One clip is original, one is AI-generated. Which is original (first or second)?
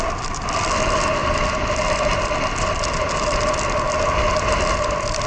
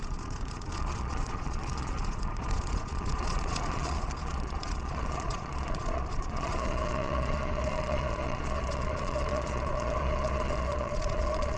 first